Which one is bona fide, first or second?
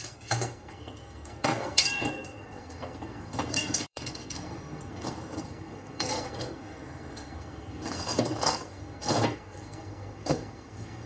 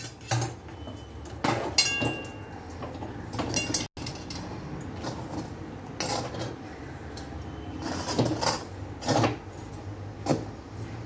second